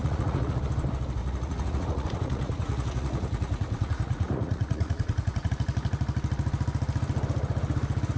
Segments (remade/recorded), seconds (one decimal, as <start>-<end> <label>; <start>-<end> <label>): 0.0-0.6 remade; 0.6-1.2 recorded; 1.2-5.5 remade; 5.5-8.2 recorded